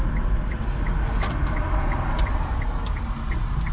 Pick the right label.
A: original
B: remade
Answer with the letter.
A